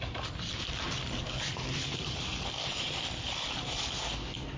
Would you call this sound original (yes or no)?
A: no